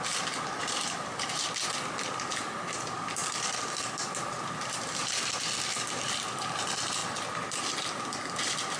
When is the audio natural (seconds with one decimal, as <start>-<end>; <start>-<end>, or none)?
7.0-8.4